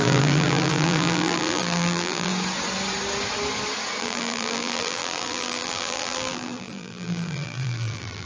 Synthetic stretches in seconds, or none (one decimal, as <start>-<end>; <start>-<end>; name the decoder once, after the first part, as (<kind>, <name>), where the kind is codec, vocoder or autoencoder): 0.0-2.3 (vocoder, BigVGAN v2); 4.0-8.3